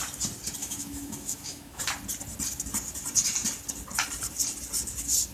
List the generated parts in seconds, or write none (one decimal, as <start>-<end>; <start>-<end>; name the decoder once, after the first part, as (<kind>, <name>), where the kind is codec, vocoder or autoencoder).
0.6-1.8 (autoencoder, DAC-VAE)